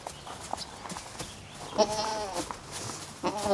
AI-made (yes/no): no